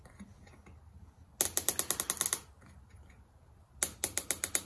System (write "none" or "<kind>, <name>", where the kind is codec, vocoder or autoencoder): none